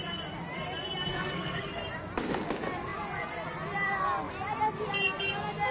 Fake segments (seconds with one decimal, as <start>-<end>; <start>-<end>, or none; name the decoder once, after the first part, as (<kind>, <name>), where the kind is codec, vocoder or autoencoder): 1.1-1.8 (codec, SNAC)